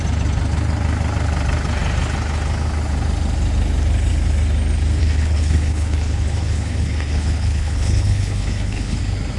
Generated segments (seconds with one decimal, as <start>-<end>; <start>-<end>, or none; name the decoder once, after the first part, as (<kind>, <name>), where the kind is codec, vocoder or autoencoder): 5.0-9.0 (codec, HILCodec)